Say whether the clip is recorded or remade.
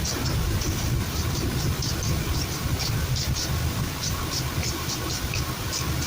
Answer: recorded